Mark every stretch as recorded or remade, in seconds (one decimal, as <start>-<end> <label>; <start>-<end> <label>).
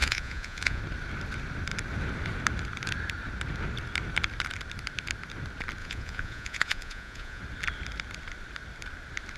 0.0-0.8 remade; 0.8-5.8 recorded; 5.8-7.4 remade; 7.4-9.4 recorded